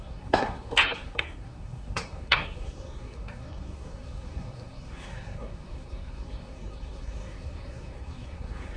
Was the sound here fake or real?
fake